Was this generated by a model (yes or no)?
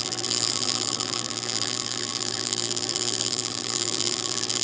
yes